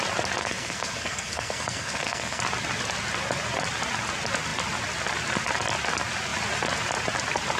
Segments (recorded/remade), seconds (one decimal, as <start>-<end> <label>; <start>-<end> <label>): 0.0-0.4 recorded; 0.4-2.4 remade; 2.4-7.6 recorded